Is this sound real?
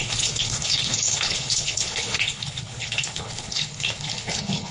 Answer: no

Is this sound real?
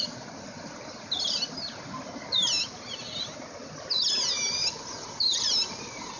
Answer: yes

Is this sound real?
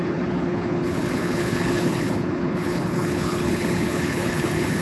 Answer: no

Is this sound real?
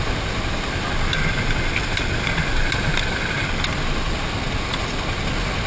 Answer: yes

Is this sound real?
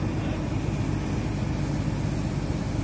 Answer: yes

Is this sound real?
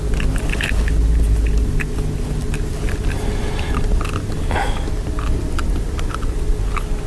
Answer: yes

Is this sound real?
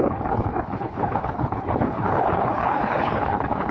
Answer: no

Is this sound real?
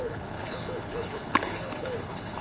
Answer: no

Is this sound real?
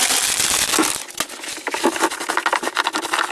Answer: yes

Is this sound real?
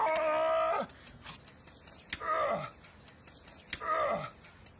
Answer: yes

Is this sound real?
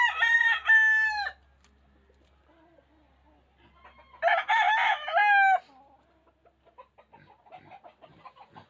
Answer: yes